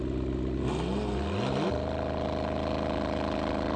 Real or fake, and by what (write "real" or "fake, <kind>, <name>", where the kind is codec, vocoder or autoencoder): real